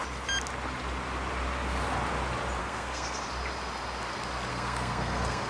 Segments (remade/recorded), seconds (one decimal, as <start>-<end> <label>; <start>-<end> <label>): 0.0-2.6 recorded; 2.6-3.2 remade; 3.2-4.5 recorded; 4.5-5.5 remade